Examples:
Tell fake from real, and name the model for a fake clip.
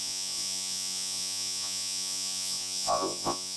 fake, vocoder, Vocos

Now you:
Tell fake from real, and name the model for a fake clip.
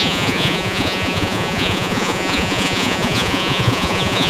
fake, vocoder, Vocos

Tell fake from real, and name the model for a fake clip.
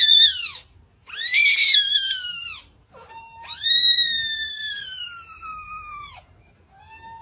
real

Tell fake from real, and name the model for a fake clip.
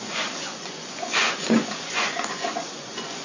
fake, vocoder, Vocos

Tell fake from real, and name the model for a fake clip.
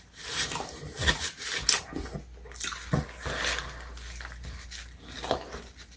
real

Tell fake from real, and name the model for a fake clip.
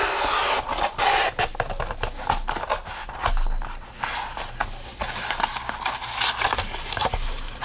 real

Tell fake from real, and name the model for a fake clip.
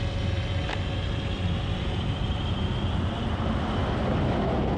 real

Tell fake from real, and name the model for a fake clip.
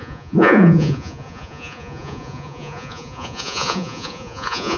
fake, vocoder, Vocos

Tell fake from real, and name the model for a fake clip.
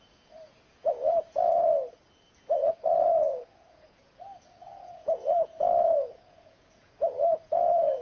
fake, vocoder, Vocos